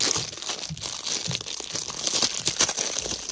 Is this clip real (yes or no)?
yes